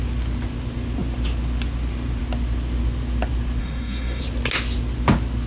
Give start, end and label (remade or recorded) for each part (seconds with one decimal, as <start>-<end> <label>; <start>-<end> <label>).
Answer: 0.0-3.6 recorded; 3.6-4.2 remade; 4.2-5.5 recorded